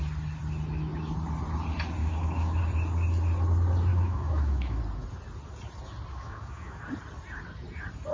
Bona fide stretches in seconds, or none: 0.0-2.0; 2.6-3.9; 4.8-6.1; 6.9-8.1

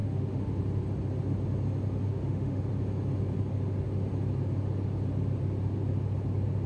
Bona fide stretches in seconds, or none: 0.6-2.1; 2.6-6.7

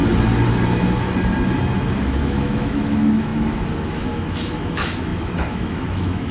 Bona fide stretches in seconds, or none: 0.0-2.2